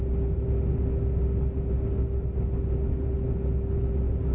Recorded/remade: recorded